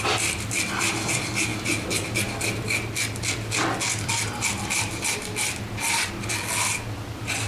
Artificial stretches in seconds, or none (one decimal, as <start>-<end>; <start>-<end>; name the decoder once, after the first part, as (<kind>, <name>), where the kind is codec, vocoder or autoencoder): none